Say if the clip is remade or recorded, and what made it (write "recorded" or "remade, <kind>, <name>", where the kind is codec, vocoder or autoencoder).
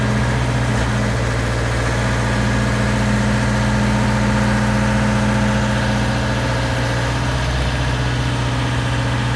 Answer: recorded